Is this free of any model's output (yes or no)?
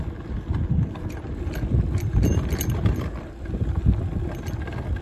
yes